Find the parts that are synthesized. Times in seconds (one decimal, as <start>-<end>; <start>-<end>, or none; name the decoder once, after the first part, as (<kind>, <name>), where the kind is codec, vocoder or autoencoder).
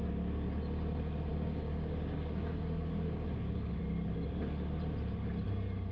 1.3-3.8 (codec, DAC)